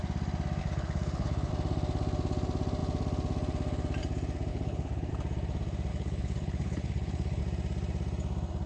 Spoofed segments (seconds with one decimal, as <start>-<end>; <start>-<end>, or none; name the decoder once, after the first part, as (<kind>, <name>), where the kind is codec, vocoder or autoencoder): 0.6-1.5 (codec, HILCodec); 4.5-5.1; 5.9-7.4